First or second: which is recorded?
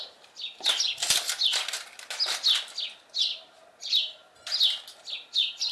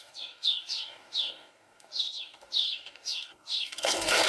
first